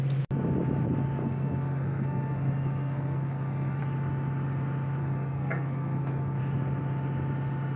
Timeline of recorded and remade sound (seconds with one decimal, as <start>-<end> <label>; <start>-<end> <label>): 0.0-1.2 recorded; 1.2-3.8 remade; 3.8-5.0 recorded; 5.0-6.4 remade; 6.4-7.8 recorded